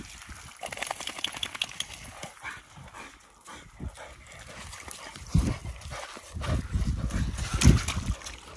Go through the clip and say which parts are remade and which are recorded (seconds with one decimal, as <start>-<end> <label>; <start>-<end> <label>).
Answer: 0.0-8.6 recorded